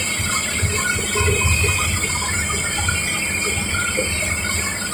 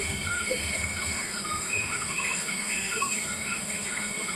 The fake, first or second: second